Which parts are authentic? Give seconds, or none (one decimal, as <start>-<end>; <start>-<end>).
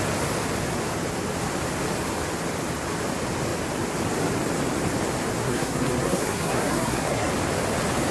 0.0-5.4; 7.3-8.1